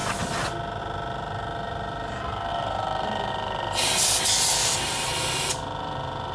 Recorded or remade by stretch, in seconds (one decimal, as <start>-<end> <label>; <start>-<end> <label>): 0.0-2.5 recorded; 2.5-3.3 remade; 3.3-4.7 recorded; 4.7-5.5 remade; 5.5-6.3 recorded